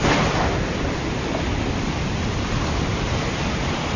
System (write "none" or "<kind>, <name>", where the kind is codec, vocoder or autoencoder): none